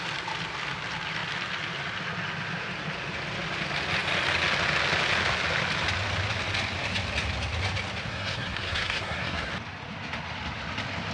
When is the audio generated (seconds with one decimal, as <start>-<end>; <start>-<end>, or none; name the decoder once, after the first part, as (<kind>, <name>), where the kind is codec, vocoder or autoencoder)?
8.1-9.5 (codec, SNAC)